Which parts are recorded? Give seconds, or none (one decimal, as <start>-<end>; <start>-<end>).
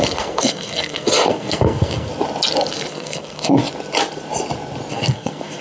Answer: 2.1-2.9; 3.6-4.9